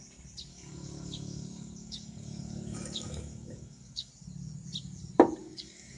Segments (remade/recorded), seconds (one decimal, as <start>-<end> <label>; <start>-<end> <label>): 0.0-0.5 recorded; 0.5-4.1 remade; 4.1-5.4 recorded; 5.4-6.0 remade